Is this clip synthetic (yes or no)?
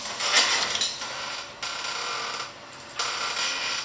no